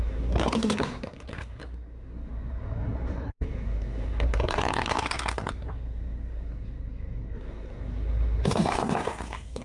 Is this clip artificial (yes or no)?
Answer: yes